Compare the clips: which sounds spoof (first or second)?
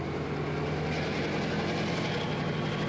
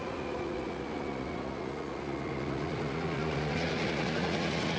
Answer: second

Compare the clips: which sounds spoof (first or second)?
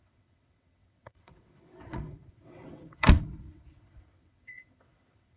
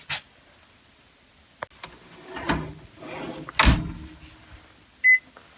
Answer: first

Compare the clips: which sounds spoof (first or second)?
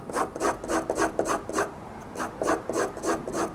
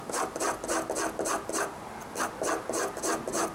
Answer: first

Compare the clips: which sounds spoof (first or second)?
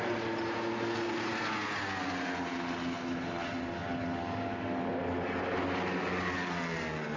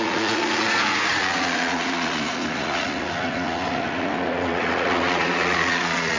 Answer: second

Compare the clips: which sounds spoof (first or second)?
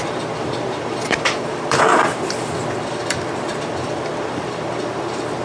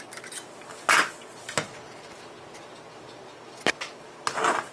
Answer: first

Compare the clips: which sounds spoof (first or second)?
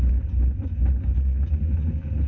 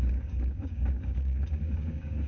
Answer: second